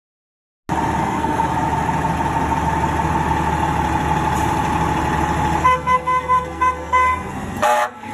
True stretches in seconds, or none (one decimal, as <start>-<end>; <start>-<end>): 0.0-1.0; 1.5-5.6